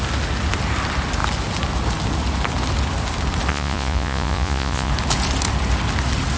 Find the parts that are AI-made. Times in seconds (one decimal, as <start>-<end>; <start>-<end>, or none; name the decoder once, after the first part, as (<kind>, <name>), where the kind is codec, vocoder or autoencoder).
3.5-4.9 (vocoder, Vocos)